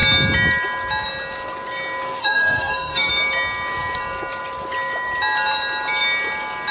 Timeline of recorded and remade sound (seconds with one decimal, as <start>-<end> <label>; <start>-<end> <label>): 0.0-2.2 recorded; 2.2-3.1 remade; 3.1-6.7 recorded